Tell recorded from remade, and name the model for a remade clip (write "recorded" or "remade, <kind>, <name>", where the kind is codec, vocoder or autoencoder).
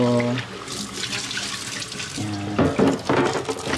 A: recorded